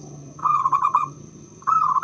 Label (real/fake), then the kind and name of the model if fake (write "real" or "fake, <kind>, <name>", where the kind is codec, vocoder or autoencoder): fake, vocoder, HiFi-GAN